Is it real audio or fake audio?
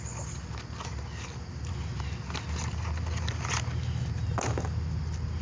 real